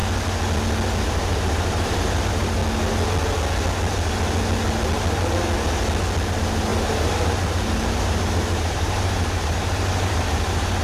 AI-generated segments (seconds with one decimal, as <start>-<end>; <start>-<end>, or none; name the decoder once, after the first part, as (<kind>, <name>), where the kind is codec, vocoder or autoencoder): 1.0-2.6 (vocoder, BigVGAN v2); 6.3-10.8